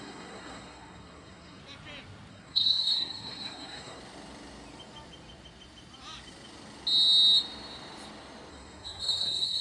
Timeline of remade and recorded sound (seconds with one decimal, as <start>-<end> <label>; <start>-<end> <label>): 0.0-1.6 remade; 1.6-2.3 recorded; 2.3-4.0 remade; 4.0-8.5 recorded; 8.5-9.6 remade